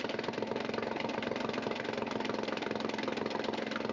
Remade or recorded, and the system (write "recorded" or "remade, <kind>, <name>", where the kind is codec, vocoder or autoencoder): recorded